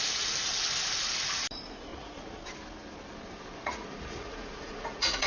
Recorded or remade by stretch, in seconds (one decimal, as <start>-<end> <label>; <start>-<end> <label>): 0.0-1.9 recorded; 1.9-2.4 remade; 2.4-3.6 recorded; 3.6-5.3 remade

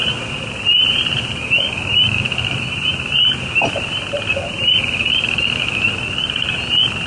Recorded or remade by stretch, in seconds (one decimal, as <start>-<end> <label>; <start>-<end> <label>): 0.0-7.1 recorded

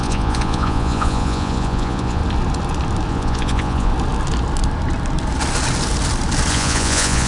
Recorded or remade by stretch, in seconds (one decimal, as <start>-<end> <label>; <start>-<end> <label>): 0.0-2.2 remade; 2.2-3.1 recorded; 3.1-3.9 remade; 3.9-6.5 recorded; 6.5-7.3 remade

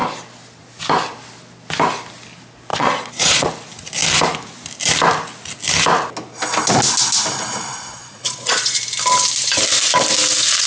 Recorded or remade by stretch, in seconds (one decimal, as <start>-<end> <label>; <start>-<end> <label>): 0.0-2.7 recorded; 2.7-3.5 remade; 3.5-8.0 recorded; 8.0-8.8 remade; 8.8-10.7 recorded

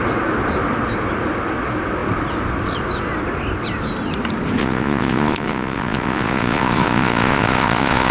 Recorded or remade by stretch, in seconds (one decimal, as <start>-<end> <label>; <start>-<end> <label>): 0.0-4.6 recorded; 4.6-8.1 remade

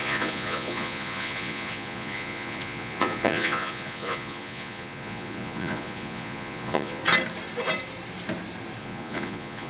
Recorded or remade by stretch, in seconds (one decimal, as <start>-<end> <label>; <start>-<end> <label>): 0.0-7.0 remade; 7.0-8.8 recorded; 8.8-9.7 remade

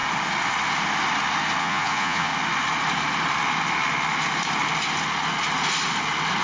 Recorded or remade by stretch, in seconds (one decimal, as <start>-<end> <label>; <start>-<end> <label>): 0.0-1.6 recorded; 1.6-2.3 remade; 2.3-6.4 recorded

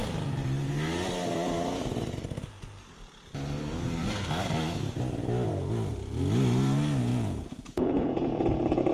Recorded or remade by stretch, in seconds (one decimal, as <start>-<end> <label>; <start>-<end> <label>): 0.0-7.1 recorded; 7.1-8.9 remade